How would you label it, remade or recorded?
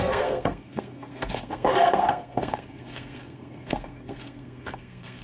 remade